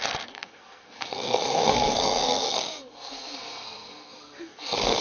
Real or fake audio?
fake